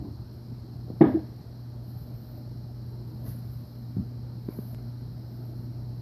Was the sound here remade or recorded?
recorded